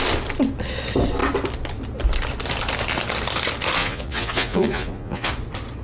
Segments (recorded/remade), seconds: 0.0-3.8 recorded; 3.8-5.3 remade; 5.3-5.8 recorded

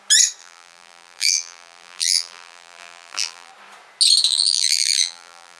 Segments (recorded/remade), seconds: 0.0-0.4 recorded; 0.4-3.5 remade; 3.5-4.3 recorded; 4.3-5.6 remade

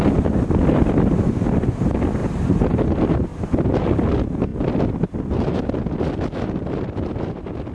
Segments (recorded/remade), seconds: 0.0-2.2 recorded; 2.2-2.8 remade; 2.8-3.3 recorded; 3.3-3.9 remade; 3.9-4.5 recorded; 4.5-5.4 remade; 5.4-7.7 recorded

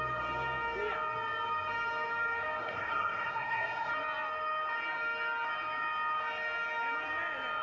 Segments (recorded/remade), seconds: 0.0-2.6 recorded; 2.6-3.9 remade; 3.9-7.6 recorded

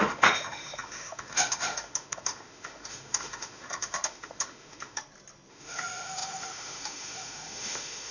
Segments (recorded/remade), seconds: 0.0-5.0 remade; 5.0-5.5 recorded; 5.5-8.1 remade

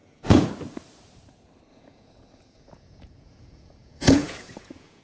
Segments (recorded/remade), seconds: 0.0-0.5 remade; 0.5-1.7 recorded; 1.7-5.0 remade

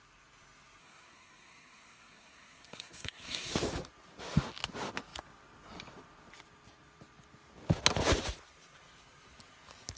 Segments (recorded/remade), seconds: 0.0-0.8 recorded; 0.8-3.5 remade; 3.5-10.0 recorded